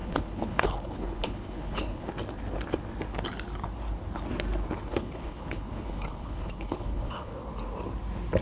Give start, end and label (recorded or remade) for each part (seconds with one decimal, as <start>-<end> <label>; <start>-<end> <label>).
0.0-2.1 remade; 2.1-4.9 recorded; 4.9-7.3 remade; 7.3-8.4 recorded